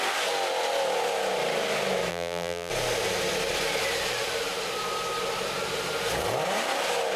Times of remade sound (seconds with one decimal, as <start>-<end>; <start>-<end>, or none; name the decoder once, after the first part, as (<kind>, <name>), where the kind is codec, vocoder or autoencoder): 2.1-2.7 (vocoder, BigVGAN v2)